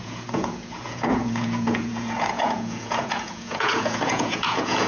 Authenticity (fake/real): fake